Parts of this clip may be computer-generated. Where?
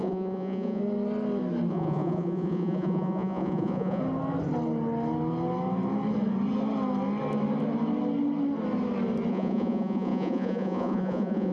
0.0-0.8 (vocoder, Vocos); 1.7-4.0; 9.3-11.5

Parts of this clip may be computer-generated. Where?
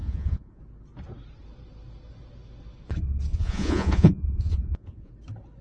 0.0-0.6 (vocoder, Vocos); 3.3-5.1